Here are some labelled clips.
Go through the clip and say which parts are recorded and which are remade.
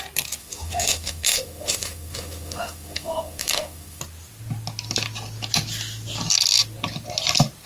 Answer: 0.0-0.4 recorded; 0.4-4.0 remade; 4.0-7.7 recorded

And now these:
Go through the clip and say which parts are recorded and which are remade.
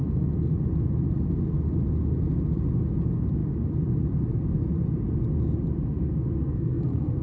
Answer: 0.0-6.4 recorded; 6.4-7.2 remade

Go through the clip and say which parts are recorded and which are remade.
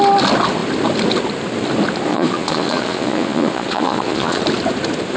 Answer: 0.0-2.1 recorded; 2.1-4.4 remade; 4.4-5.2 recorded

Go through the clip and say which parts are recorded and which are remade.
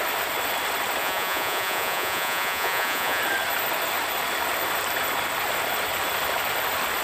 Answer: 0.0-1.0 recorded; 1.0-3.2 remade; 3.2-7.0 recorded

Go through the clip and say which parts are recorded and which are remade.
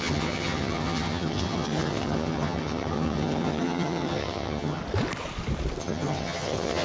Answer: 0.0-4.8 remade; 4.8-5.8 recorded; 5.8-6.8 remade